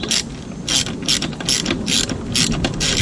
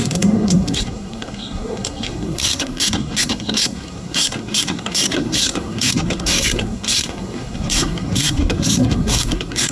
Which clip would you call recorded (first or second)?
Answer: first